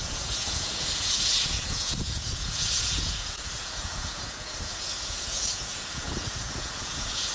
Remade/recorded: remade